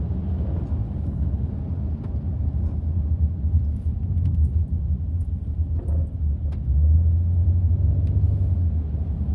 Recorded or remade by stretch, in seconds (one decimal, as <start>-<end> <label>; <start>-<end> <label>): 0.0-0.8 recorded; 0.8-1.5 remade; 1.5-9.3 recorded